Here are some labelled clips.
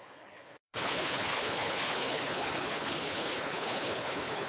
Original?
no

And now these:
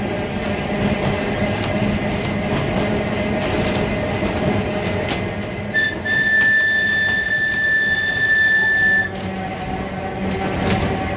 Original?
yes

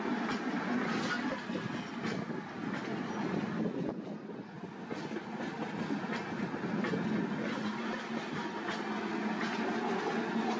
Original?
yes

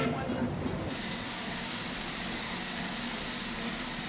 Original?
yes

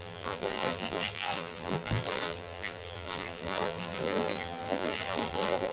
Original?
no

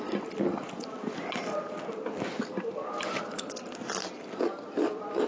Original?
yes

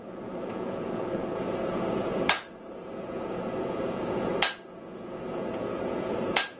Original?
no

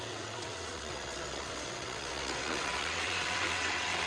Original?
no